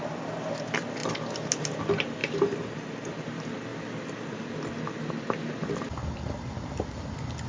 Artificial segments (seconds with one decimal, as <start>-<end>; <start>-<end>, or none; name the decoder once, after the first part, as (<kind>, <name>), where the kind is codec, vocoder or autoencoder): none

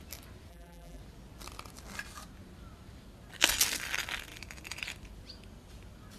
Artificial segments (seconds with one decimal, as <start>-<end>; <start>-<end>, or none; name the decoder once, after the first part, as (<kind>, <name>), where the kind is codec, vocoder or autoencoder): 0.5-1.0 (vocoder, BigVGAN v2)

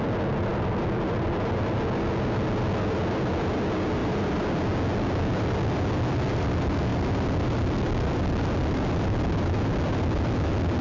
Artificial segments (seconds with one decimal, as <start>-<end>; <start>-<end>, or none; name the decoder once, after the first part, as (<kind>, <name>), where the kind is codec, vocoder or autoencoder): 4.0-4.5 (vocoder, BigVGAN v2)

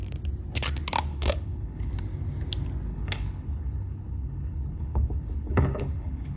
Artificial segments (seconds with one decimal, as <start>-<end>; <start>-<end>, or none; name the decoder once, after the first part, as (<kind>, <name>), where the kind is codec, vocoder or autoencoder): 1.1-1.9 (codec, HILCodec); 2.9-6.4